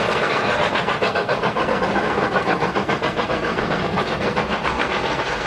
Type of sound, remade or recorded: remade